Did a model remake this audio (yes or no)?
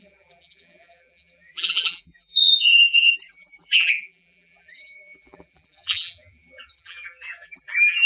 yes